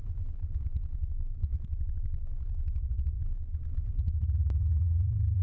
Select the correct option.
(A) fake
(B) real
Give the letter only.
A